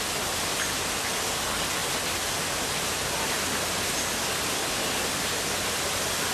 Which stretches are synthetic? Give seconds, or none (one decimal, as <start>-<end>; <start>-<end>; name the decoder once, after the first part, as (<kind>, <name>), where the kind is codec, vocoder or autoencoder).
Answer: none